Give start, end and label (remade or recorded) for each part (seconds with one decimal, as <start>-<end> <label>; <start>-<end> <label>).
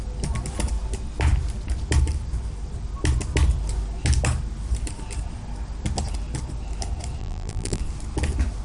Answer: 0.0-7.2 recorded; 7.2-7.8 remade; 7.8-8.6 recorded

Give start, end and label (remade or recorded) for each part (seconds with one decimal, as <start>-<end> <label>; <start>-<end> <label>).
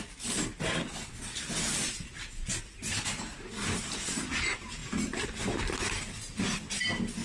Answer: 0.0-7.2 recorded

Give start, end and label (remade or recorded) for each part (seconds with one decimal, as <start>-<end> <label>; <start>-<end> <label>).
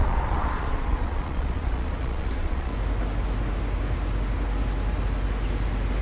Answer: 0.0-2.7 remade; 2.7-6.0 recorded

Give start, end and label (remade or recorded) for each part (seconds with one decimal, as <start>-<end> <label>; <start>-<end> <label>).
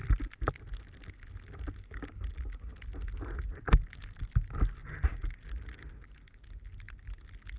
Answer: 0.0-7.6 recorded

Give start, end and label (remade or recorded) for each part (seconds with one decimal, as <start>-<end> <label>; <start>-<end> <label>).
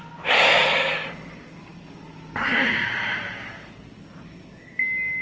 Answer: 0.0-5.2 recorded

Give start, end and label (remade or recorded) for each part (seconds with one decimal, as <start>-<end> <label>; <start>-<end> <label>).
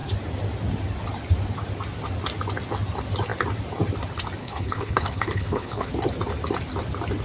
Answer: 0.0-4.4 recorded; 4.4-5.9 remade; 5.9-7.2 recorded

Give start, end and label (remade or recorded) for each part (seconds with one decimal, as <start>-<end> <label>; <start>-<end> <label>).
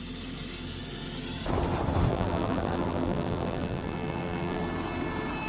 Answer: 0.0-2.1 recorded; 2.1-4.6 remade; 4.6-5.5 recorded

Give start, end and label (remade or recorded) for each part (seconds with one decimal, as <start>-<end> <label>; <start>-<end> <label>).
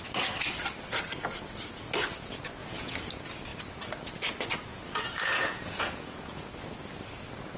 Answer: 0.0-2.6 recorded; 2.6-3.1 remade; 3.1-4.7 recorded; 4.7-6.5 remade; 6.5-7.6 recorded